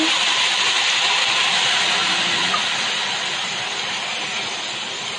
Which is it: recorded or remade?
recorded